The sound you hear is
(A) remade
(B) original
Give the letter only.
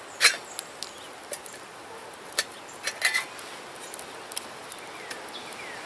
B